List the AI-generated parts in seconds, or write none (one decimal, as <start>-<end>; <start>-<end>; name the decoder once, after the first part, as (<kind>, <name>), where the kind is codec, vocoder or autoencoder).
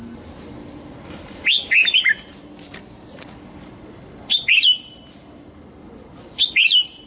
none